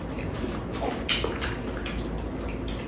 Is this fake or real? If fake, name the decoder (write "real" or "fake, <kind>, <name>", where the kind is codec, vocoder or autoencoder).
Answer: real